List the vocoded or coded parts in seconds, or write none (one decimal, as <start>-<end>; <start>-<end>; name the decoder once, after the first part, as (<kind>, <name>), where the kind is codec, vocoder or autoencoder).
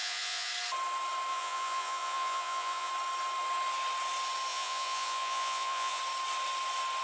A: 0.0-0.5 (vocoder, Vocos); 1.3-2.9; 4.5-6.0